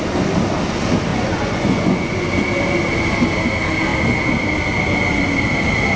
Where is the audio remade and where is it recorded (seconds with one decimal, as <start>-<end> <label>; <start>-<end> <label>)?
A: 0.0-1.1 recorded; 1.1-2.3 remade; 2.3-6.0 recorded